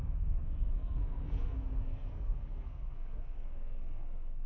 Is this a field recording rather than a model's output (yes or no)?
no